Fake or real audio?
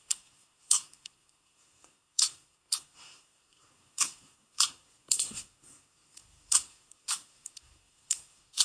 fake